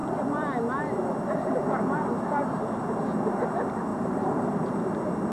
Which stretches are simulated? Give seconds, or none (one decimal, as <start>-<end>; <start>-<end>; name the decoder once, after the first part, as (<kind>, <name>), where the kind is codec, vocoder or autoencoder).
3.9-4.5 (vocoder, BigVGAN v2)